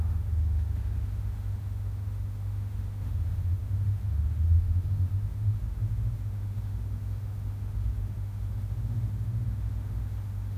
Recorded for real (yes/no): no